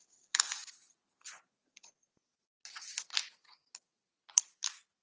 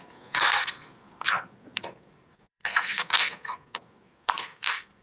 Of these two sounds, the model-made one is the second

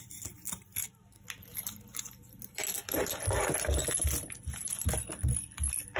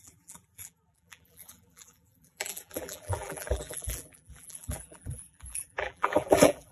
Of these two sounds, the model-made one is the second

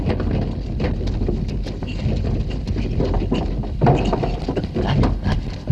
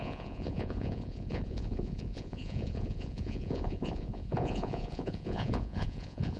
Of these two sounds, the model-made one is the second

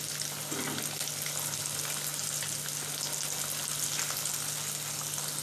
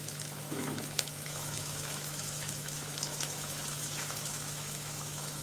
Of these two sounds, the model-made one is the second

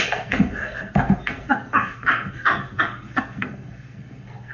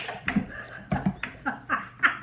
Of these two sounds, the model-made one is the first